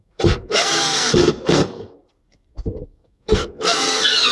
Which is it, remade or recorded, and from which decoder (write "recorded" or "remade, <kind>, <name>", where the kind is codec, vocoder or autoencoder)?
remade, codec, SNAC